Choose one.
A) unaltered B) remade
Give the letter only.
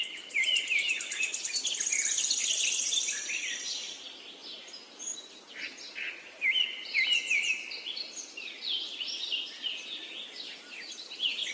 B